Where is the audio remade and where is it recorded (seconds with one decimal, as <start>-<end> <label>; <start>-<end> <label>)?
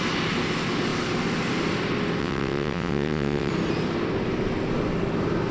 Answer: 0.0-2.2 recorded; 2.2-3.5 remade; 3.5-5.5 recorded